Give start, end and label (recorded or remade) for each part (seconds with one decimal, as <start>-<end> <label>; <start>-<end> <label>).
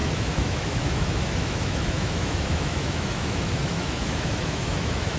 0.0-5.2 remade